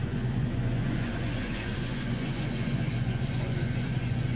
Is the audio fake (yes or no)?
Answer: yes